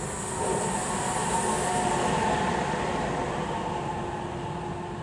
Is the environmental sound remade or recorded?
recorded